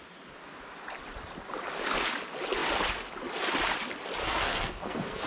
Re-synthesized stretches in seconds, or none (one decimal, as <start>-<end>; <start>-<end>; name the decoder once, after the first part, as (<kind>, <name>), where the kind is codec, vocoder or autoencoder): 4.2-5.3 (codec, SNAC)